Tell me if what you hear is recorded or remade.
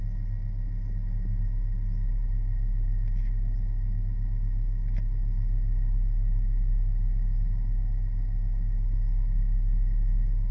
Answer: recorded